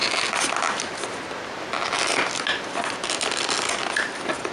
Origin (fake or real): real